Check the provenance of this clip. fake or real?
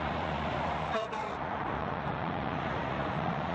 fake